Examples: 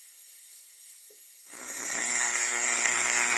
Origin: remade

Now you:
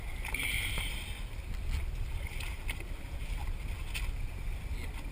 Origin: recorded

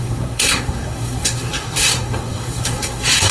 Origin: remade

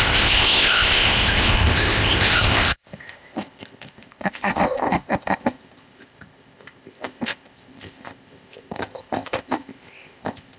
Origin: remade